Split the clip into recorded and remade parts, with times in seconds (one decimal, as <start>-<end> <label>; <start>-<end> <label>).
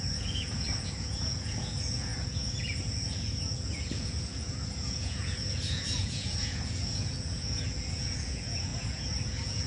0.0-9.7 remade